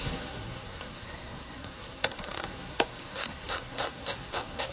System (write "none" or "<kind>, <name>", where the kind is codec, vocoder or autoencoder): codec, SNAC